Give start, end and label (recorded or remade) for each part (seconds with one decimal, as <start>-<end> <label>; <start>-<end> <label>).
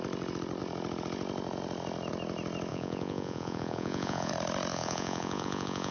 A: 0.0-2.7 recorded; 2.7-4.3 remade; 4.3-4.7 recorded; 4.7-5.9 remade